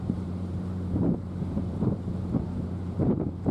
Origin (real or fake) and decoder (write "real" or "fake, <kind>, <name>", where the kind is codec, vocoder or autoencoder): fake, vocoder, BigVGAN v2